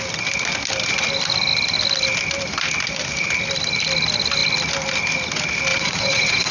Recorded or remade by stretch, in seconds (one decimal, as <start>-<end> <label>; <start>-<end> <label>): 0.0-5.7 recorded; 5.7-6.5 remade